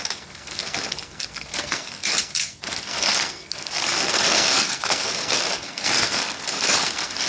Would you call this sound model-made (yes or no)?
yes